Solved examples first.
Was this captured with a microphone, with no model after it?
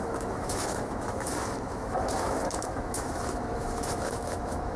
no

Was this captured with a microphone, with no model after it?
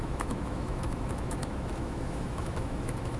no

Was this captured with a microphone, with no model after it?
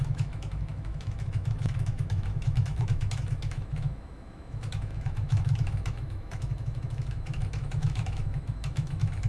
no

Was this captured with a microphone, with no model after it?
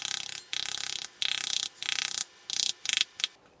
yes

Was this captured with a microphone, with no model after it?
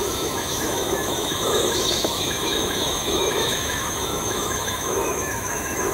no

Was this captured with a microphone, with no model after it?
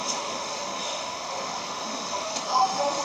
no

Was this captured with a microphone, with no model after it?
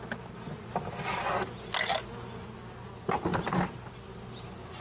yes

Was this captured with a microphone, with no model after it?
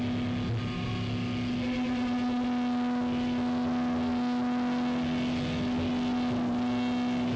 yes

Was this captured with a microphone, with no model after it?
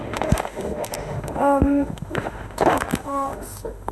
no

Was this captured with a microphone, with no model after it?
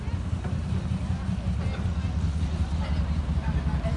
yes